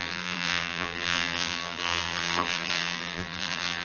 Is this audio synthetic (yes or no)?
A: yes